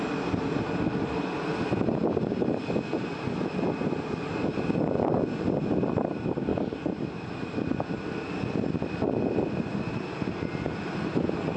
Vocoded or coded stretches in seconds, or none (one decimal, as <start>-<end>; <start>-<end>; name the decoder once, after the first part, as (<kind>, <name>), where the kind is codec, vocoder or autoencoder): none